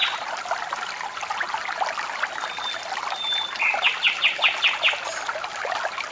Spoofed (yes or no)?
no